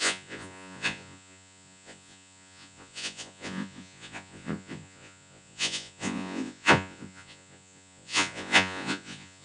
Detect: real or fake fake